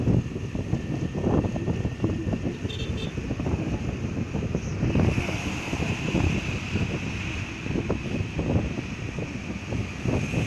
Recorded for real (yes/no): yes